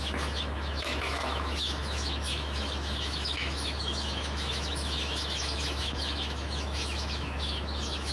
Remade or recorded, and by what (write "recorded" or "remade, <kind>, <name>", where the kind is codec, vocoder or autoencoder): remade, autoencoder, DAC-VAE